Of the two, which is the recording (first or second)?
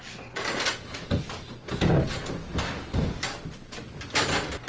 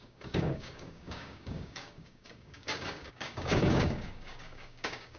first